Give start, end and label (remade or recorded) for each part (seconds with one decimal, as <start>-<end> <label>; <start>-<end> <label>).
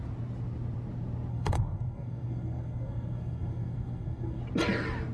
0.0-1.3 recorded; 1.3-4.4 remade; 4.4-5.1 recorded